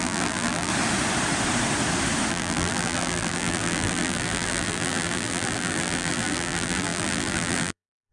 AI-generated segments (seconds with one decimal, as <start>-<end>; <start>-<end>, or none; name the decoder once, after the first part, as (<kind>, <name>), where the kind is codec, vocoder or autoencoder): 0.0-0.7 (vocoder, BigVGAN v2); 2.3-8.1